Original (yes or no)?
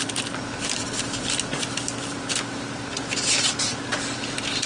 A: yes